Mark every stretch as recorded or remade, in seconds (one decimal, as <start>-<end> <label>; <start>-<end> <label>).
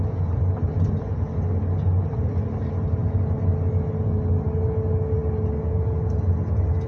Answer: 0.0-6.9 recorded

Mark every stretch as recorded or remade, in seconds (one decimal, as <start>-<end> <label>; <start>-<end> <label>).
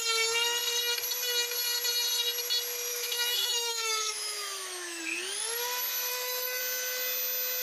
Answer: 0.0-2.9 recorded; 2.9-5.0 remade; 5.0-6.1 recorded; 6.1-6.6 remade; 6.6-7.6 recorded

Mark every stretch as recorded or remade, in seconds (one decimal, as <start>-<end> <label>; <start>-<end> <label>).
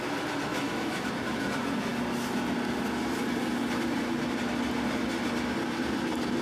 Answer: 0.0-0.5 recorded; 0.5-1.1 remade; 1.1-6.4 recorded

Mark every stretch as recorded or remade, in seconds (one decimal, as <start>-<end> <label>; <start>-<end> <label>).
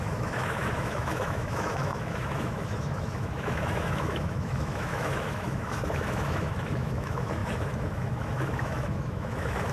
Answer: 0.0-9.7 remade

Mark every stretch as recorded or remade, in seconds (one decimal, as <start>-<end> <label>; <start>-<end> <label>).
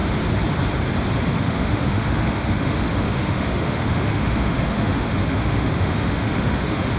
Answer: 0.0-1.2 recorded; 1.2-7.0 remade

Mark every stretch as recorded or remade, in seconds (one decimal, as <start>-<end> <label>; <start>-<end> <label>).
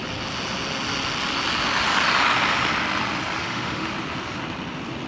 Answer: 0.0-3.4 recorded; 3.4-3.9 remade; 3.9-5.1 recorded